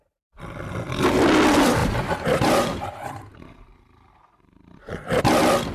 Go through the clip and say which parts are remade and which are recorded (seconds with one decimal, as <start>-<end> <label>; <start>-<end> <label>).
0.0-1.8 recorded; 1.8-5.2 remade; 5.2-5.7 recorded